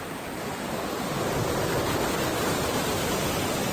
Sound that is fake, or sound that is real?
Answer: real